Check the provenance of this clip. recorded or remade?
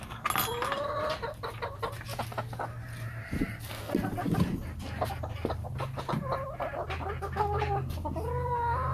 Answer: recorded